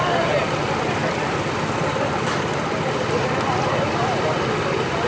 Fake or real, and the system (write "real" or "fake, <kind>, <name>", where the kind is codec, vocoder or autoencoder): real